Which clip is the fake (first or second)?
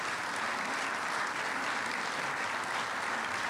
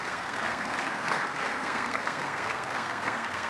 second